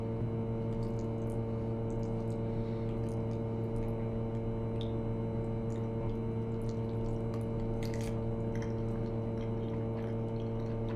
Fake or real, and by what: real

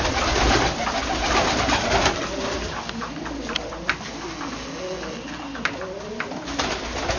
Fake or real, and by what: real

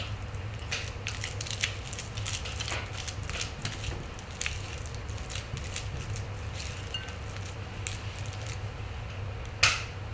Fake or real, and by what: real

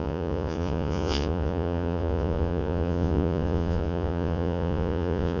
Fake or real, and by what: fake, vocoder, Vocos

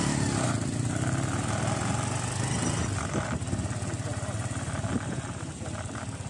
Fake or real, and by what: real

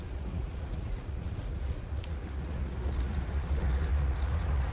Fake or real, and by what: fake, vocoder, Vocos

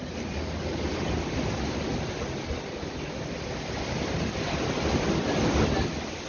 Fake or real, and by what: real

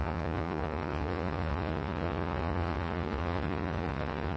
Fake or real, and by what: fake, vocoder, Vocos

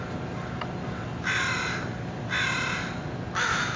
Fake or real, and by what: real